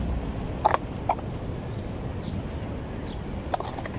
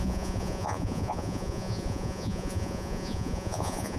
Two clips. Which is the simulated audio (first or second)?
second